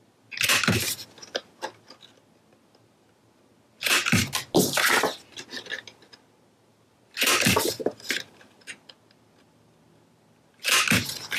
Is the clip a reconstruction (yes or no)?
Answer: no